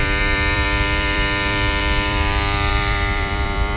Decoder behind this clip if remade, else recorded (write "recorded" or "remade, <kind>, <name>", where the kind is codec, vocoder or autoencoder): remade, vocoder, BigVGAN v2